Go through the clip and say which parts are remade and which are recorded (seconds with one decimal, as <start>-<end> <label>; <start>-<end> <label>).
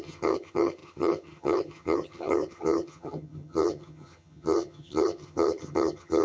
0.0-6.2 remade